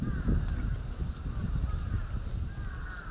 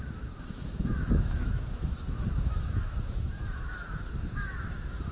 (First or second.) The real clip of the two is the first